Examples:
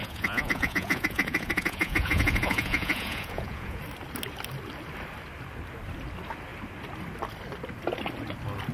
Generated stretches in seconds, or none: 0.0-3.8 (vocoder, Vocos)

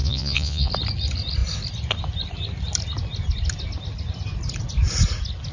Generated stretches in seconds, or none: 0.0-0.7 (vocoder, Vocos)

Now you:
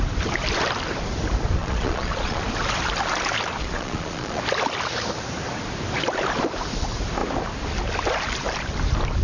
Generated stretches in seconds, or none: 1.6-2.4 (vocoder, Vocos); 3.6-4.4

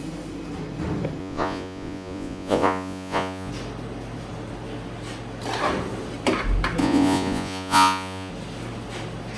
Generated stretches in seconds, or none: 1.2-3.5 (vocoder, Vocos); 6.8-8.3